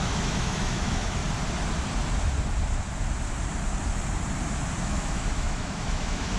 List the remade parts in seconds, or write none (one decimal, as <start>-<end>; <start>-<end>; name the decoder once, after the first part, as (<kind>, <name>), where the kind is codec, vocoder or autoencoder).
0.0-1.2 (autoencoder, DAC-VAE); 4.8-6.4